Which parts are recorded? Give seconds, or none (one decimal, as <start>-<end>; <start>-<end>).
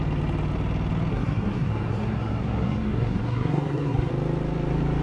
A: 0.0-1.1; 4.1-5.0